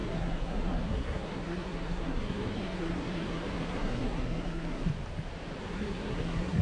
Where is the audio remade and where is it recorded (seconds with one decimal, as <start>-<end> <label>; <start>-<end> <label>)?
0.0-4.9 remade; 4.9-5.6 recorded; 5.6-6.6 remade